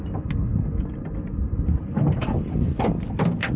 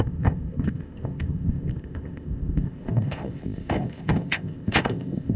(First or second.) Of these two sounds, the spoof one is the second